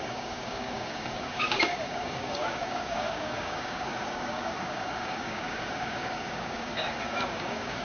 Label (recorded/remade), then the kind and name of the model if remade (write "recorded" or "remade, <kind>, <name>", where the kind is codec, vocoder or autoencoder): remade, codec, DAC